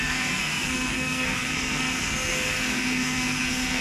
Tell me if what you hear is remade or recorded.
remade